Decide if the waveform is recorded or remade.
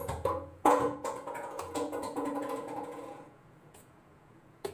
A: remade